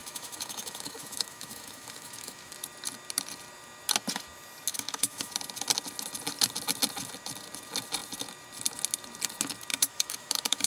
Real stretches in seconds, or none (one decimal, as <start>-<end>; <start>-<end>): 2.5-4.7; 5.3-9.7